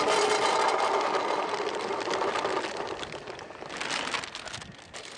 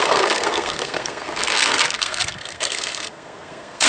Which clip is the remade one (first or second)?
second